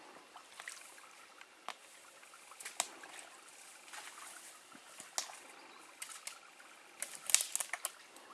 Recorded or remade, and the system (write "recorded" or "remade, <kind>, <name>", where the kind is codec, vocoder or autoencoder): recorded